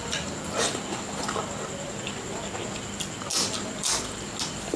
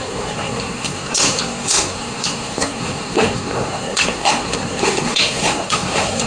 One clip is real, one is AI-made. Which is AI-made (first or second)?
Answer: second